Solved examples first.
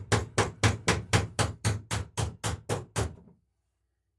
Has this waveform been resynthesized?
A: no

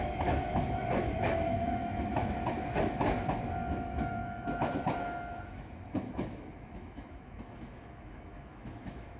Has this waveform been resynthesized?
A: yes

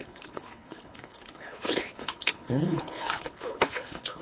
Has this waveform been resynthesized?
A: yes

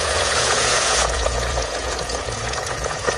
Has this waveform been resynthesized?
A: yes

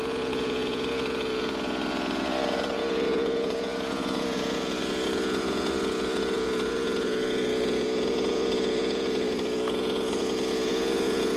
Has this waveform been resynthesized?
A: yes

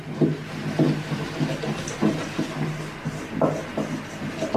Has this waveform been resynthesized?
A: no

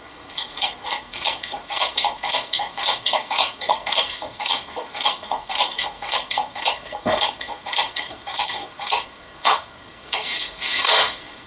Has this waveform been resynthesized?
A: yes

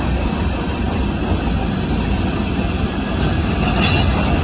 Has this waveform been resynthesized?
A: no